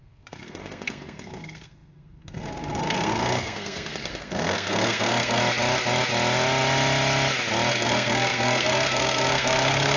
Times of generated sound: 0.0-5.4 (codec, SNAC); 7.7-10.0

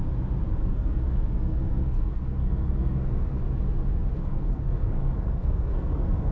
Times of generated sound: 0.5-3.4 (codec, SNAC); 4.2-6.3

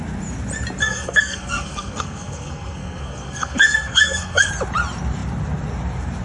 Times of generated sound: 0.8-4.5 (codec, SNAC)

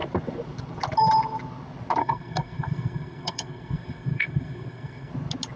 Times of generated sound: 2.0-5.1 (codec, SNAC)

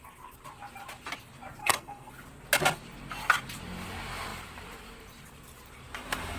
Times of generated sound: 1.6-2.1 (codec, SNAC)